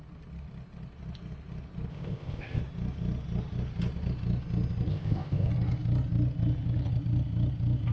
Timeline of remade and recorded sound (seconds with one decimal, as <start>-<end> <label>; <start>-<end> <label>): 0.0-1.9 recorded; 1.9-2.6 remade; 2.6-4.9 recorded; 4.9-5.5 remade; 5.5-7.9 recorded